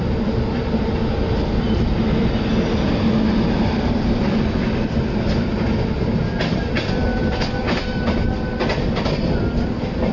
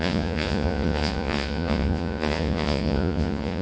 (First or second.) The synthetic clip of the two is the second